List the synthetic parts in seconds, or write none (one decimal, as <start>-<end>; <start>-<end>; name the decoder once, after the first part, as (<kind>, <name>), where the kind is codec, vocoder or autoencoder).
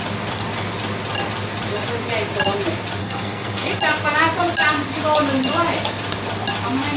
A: 3.0-3.7 (codec, SNAC)